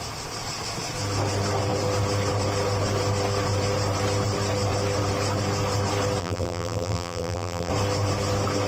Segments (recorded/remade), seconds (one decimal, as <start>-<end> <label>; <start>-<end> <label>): 0.0-6.2 recorded; 6.2-7.7 remade; 7.7-8.7 recorded